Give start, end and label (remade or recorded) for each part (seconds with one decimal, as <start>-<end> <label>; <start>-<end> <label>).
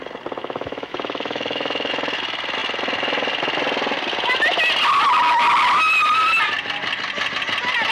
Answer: 0.0-0.4 recorded; 0.4-1.9 remade; 1.9-7.9 recorded